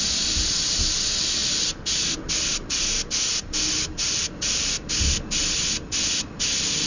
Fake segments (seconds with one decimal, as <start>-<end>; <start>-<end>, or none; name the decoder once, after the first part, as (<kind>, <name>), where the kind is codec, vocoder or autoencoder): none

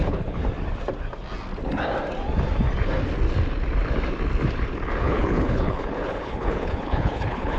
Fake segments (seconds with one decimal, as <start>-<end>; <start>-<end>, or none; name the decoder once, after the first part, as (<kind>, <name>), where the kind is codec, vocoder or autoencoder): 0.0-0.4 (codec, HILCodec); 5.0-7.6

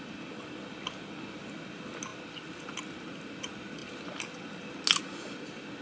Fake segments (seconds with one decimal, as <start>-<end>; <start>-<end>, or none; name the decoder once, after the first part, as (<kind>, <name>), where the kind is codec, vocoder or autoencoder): none

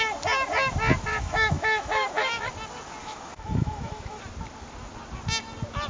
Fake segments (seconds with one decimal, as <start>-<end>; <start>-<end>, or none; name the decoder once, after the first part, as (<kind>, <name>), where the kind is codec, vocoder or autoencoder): 1.1-2.5 (autoencoder, DAC-VAE); 3.0-4.2

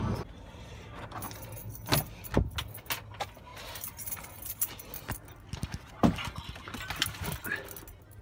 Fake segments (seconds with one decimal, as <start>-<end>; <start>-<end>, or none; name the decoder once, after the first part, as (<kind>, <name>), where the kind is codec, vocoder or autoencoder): none

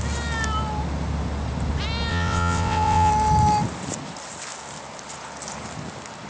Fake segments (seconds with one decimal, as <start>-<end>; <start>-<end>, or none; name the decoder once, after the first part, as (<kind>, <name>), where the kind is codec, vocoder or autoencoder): 2.1-3.1 (vocoder, WaveNeXt)

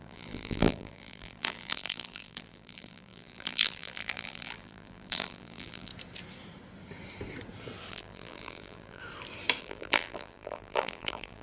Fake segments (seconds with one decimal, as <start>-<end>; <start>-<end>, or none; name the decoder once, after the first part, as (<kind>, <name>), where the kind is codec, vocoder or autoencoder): 0.0-5.9 (vocoder, BigVGAN v2); 7.9-9.0; 9.6-11.4

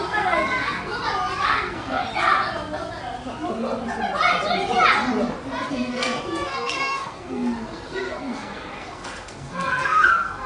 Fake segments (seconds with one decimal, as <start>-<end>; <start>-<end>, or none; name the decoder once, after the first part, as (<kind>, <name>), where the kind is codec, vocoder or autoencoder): 0.0-0.9 (codec, SNAC); 1.4-2.0; 5.7-10.5